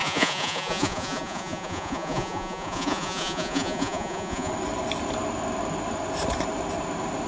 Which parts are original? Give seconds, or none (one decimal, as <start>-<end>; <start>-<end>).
4.5-7.3